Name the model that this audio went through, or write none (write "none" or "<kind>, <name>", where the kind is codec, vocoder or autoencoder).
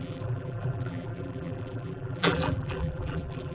vocoder, BigVGAN v2